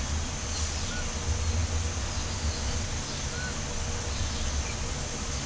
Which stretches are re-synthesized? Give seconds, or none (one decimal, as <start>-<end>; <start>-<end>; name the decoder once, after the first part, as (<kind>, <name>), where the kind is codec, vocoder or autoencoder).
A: none